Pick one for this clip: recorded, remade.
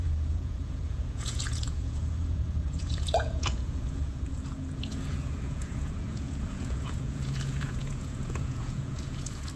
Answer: remade